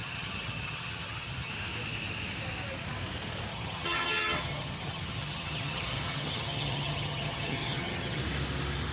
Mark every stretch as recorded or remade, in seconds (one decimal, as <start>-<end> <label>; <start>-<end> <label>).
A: 0.0-1.5 remade; 1.5-3.5 recorded; 3.5-8.2 remade; 8.2-8.9 recorded